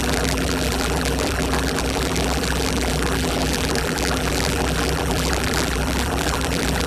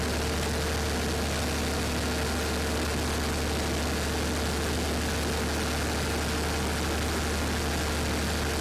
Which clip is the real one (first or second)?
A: second